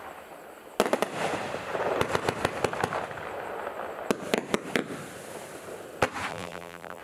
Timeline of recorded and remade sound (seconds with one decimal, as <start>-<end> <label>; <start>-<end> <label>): 0.0-6.3 recorded; 6.3-7.0 remade